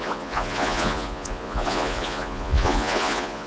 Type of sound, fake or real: fake